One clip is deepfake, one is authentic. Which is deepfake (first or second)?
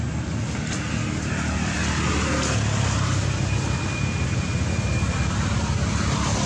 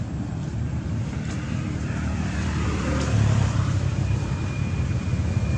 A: second